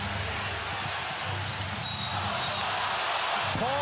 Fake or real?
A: real